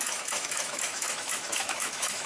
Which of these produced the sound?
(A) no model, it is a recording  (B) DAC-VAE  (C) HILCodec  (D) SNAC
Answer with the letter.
B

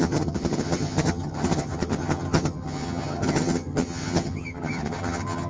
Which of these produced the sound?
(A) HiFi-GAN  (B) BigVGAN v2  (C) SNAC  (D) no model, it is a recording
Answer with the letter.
A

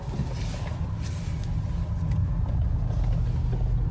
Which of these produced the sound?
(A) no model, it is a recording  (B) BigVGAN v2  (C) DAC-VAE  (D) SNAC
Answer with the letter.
A